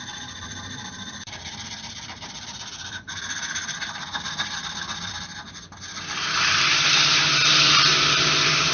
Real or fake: fake